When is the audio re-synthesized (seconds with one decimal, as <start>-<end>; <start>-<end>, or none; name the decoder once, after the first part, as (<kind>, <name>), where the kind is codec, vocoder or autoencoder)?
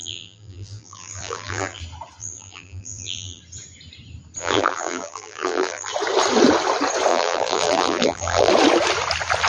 0.0-1.8 (vocoder, BigVGAN v2); 2.2-3.4; 4.4-5.9; 7.1-8.5